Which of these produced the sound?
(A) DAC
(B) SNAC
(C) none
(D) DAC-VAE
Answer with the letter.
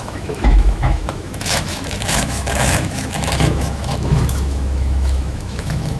D